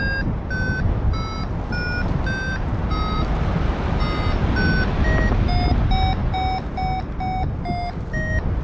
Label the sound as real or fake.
real